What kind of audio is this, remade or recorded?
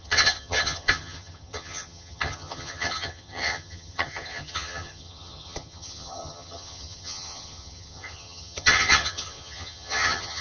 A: remade